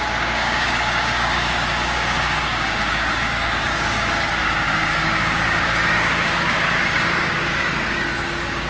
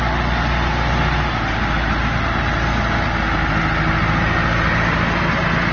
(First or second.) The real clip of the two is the second